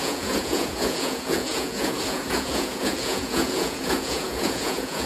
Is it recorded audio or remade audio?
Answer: remade